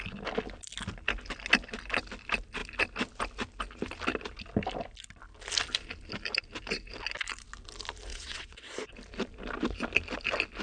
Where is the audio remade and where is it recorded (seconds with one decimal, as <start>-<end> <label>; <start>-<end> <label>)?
0.0-8.1 recorded; 8.1-8.7 remade; 8.7-10.6 recorded